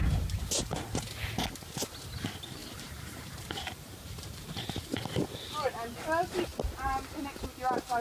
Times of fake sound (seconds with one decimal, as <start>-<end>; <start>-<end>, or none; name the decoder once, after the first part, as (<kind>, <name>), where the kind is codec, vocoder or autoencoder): 2.6-5.0 (vocoder, BigVGAN v2)